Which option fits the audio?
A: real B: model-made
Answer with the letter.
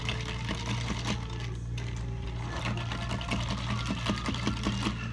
A